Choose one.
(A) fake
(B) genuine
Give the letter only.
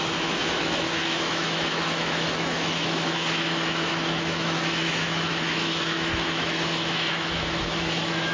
A